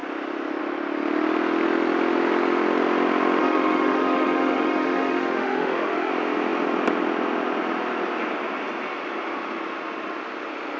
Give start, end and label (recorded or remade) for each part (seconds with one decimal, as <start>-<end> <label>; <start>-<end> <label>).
0.0-3.4 recorded; 3.4-6.1 remade; 6.1-10.8 recorded